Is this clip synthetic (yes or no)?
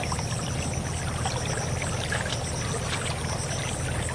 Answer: no